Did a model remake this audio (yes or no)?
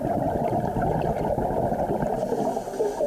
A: yes